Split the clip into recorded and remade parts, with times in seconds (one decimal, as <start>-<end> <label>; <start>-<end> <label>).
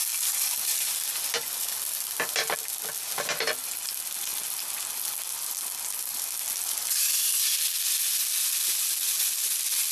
0.0-9.9 recorded